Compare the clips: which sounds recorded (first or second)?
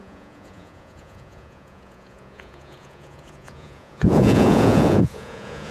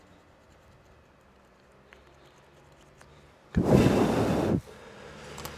second